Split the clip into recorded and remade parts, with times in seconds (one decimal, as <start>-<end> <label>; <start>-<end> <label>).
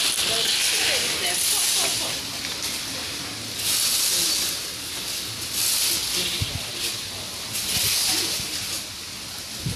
0.0-6.0 recorded; 6.0-6.7 remade; 6.7-9.8 recorded